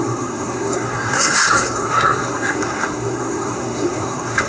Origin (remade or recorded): remade